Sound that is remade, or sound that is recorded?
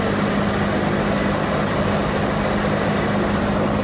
recorded